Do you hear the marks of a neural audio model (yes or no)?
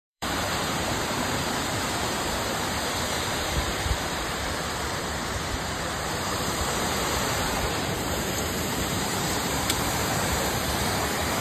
yes